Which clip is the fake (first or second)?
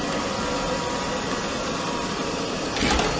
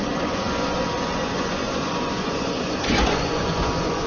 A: second